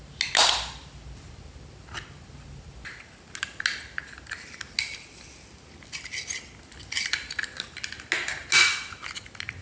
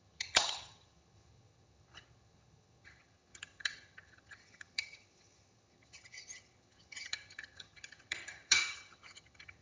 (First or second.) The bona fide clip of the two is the first